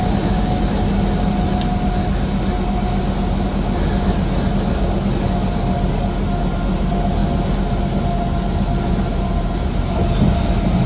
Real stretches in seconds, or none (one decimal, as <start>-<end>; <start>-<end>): 0.0-10.9